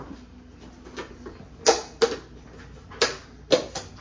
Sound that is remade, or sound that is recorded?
recorded